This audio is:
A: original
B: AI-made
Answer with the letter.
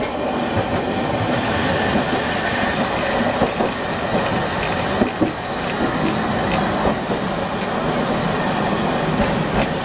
A